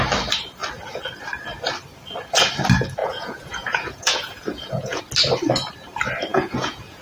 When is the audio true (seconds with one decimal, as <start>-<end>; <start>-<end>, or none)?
0.0-3.0; 5.0-6.3